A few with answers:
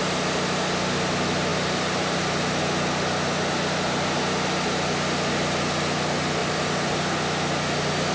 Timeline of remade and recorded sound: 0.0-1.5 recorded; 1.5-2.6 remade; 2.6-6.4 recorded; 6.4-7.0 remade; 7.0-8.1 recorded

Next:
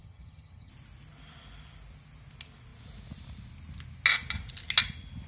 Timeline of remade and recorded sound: 0.0-0.7 remade; 0.7-5.3 recorded

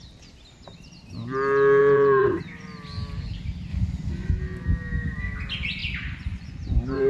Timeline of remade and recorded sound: 0.0-1.8 recorded; 1.8-2.4 remade; 2.4-3.7 recorded; 3.7-4.3 remade; 4.3-5.8 recorded; 5.8-7.1 remade

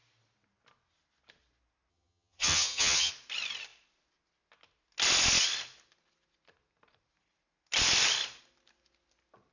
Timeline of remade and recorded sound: 0.0-1.9 recorded; 1.9-3.1 remade; 3.1-9.5 recorded

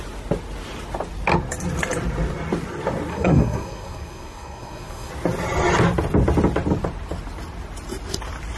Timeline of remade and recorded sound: 0.0-3.1 recorded; 3.1-5.1 remade; 5.1-8.6 recorded

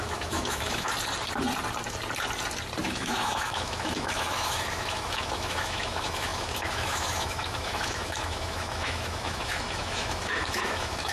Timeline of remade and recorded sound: 0.0-0.9 remade; 0.9-2.8 recorded; 2.8-11.1 remade